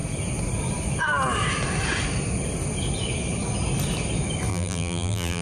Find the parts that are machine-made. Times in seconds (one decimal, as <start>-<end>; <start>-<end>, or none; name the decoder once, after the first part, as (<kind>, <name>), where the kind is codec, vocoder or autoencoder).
4.5-5.4 (vocoder, BigVGAN v2)